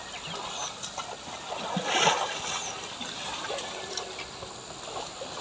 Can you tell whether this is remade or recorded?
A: recorded